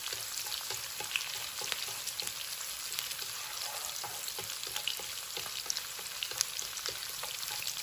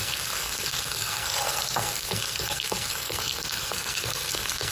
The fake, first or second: second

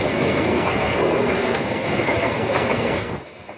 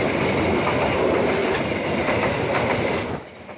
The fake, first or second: first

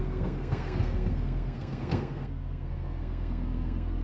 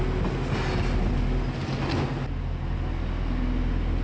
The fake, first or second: first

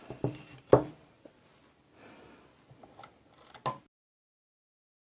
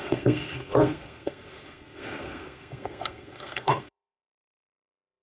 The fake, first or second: second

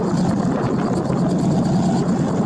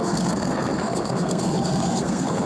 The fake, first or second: second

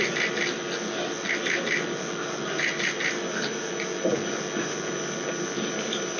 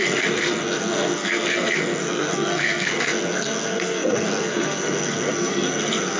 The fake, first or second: second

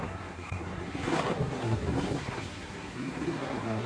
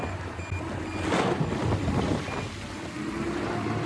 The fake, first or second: first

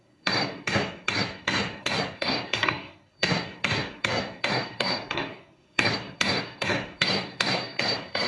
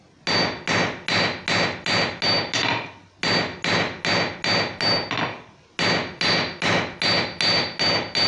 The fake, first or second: first